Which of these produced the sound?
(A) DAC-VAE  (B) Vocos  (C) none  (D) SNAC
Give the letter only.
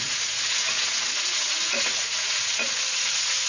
B